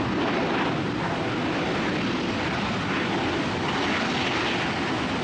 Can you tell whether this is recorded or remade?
recorded